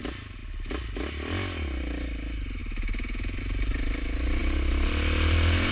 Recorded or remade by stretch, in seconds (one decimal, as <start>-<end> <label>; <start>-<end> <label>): 0.0-5.7 recorded